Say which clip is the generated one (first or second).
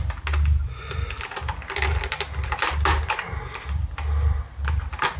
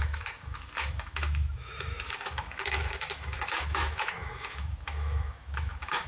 second